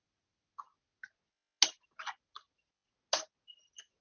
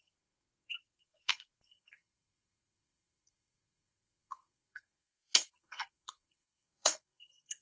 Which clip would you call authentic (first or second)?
first